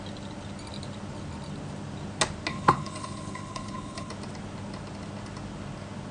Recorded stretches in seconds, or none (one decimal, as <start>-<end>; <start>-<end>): 0.0-2.5; 4.1-6.1